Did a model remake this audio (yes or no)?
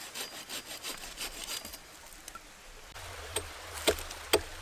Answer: no